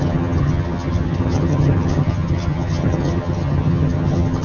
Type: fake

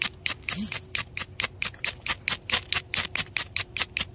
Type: real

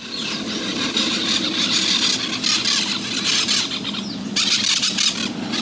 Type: real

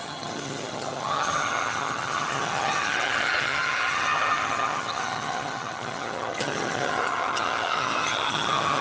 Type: fake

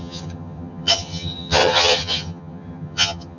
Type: fake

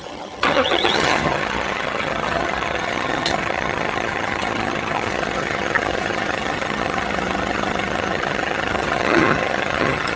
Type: fake